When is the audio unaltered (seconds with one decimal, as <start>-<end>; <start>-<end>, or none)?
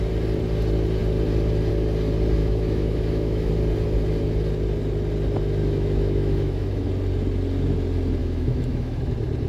0.0-2.4; 3.5-5.6; 6.9-8.2; 9.1-9.5